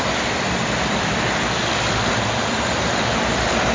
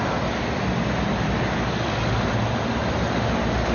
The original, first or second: second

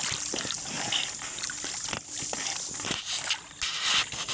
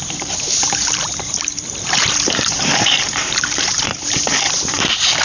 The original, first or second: first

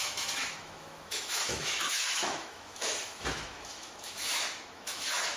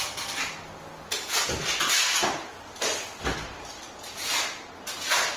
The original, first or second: second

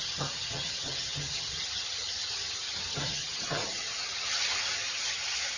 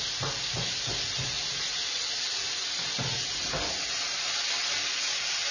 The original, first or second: second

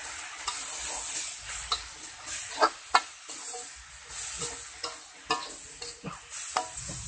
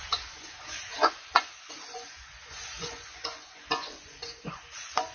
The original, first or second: first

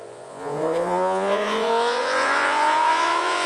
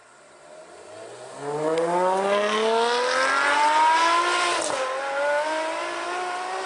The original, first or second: second